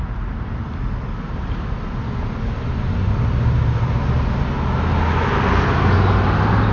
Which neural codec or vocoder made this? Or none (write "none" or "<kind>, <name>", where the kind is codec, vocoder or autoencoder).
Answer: none